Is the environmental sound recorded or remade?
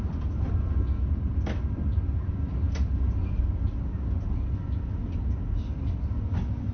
recorded